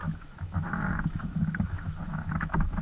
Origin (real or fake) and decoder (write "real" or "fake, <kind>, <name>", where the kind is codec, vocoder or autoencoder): fake, autoencoder, DAC-VAE